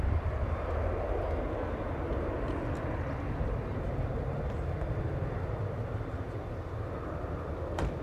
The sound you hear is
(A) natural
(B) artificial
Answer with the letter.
A